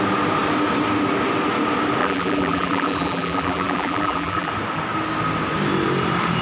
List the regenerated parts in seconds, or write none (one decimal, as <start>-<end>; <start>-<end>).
2.0-4.5